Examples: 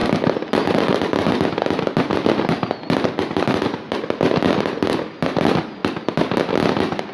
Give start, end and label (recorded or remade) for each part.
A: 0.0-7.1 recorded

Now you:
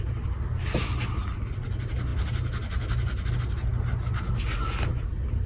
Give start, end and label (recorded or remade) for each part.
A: 0.0-5.5 recorded

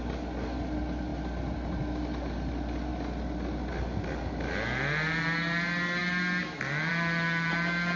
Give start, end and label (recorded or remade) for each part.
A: 0.0-8.0 recorded

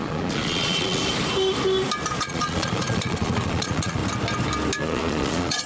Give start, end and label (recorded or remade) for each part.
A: 0.0-1.0 remade; 1.0-2.2 recorded; 2.2-4.0 remade; 4.0-4.8 recorded; 4.8-5.7 remade